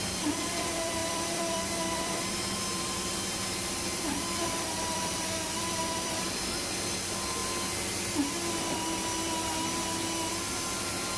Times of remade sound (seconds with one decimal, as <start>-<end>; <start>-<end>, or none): 0.0-7.4; 10.4-11.2